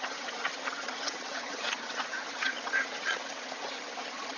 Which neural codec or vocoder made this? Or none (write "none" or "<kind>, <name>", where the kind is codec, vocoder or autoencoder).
vocoder, HiFi-GAN